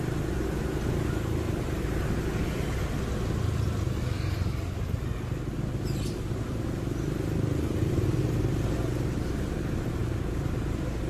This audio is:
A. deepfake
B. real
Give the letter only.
B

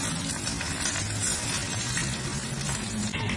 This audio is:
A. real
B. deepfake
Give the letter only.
A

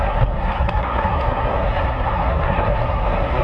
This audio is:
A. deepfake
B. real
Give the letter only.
A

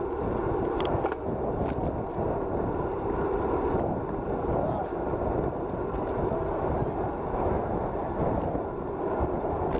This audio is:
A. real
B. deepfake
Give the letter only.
A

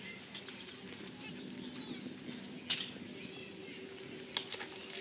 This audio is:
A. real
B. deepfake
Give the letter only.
A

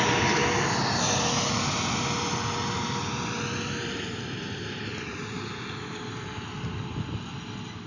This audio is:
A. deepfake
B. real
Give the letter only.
B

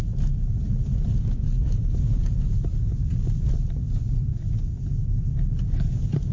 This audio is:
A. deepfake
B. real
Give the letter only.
B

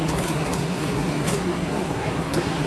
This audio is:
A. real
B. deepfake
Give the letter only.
B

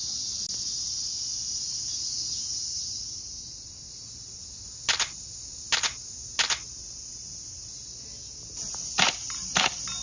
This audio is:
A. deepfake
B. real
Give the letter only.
B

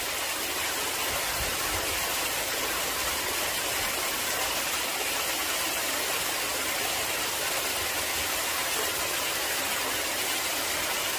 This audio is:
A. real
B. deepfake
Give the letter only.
A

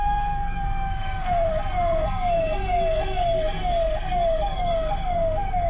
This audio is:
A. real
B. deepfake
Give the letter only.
B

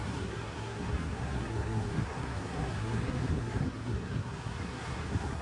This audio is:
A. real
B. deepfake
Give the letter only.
B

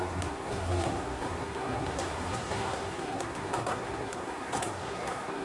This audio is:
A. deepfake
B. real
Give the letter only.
A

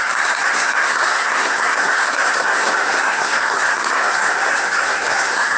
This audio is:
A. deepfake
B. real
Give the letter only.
A